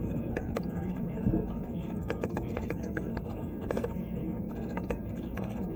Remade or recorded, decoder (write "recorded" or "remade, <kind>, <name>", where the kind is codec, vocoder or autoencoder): remade, codec, SNAC